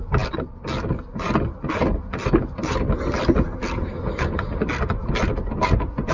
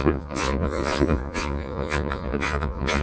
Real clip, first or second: first